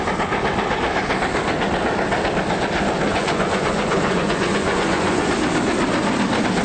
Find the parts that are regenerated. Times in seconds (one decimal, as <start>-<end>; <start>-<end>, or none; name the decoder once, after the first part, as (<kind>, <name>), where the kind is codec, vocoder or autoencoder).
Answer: 3.1-5.3 (vocoder, Vocos)